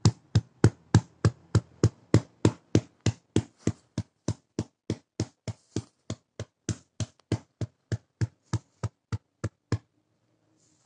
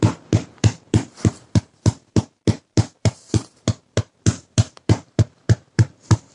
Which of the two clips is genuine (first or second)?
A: first